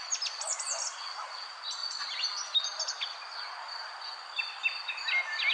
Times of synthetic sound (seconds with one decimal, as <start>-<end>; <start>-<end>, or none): none